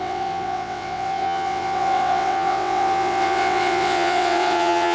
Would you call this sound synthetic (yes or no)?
yes